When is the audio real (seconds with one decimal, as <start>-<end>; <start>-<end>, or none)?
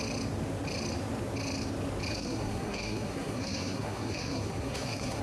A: 0.0-2.1